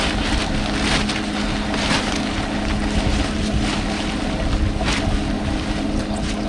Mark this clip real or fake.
real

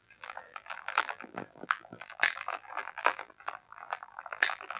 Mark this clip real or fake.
fake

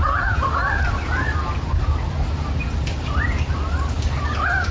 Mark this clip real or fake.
real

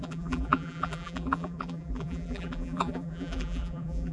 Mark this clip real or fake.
fake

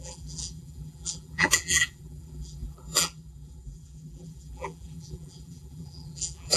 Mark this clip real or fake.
fake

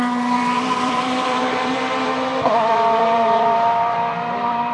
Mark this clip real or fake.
fake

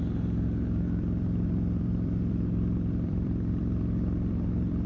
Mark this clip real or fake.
fake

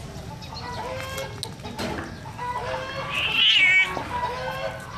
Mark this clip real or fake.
real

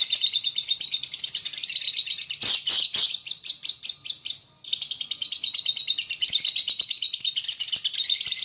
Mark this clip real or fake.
real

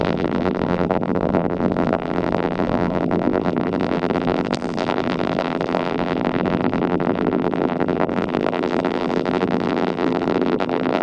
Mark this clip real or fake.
fake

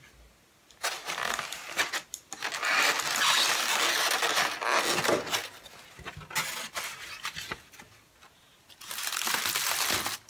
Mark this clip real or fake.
real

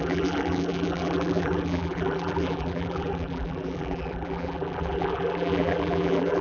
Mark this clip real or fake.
fake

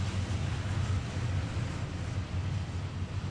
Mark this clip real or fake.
real